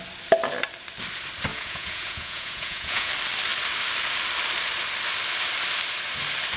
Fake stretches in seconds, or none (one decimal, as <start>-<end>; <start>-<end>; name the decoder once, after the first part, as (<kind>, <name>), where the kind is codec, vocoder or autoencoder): 1.5-3.1 (vocoder, Vocos)